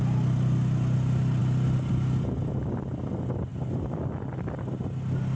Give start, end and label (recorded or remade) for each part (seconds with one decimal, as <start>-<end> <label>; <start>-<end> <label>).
0.0-5.3 recorded